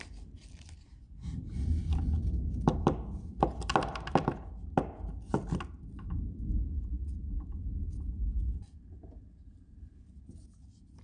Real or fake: real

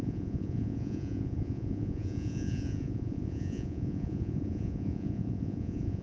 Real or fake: fake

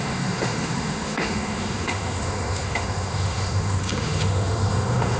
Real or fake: fake